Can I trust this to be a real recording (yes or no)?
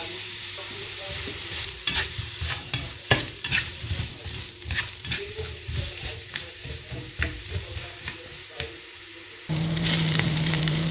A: no